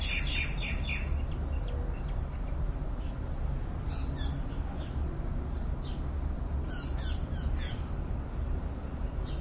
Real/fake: real